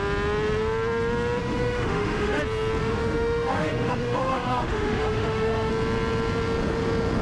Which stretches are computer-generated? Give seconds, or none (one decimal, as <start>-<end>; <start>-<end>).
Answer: 1.4-2.4; 2.8-5.7